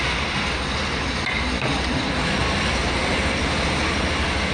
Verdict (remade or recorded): recorded